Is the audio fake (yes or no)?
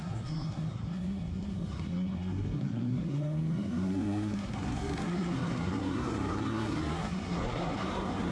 yes